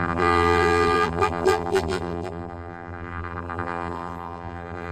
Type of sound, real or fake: fake